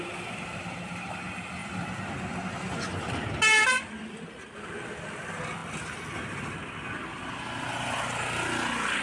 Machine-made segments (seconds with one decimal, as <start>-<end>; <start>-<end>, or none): none